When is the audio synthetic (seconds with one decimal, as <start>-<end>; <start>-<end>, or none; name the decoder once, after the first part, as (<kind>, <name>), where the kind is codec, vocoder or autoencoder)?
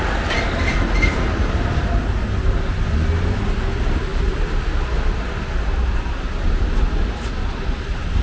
none